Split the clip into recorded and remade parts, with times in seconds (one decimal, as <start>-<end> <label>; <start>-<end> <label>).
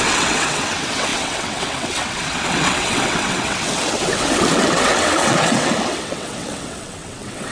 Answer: 0.0-7.5 remade